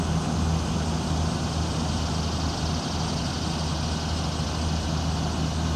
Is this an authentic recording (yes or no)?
yes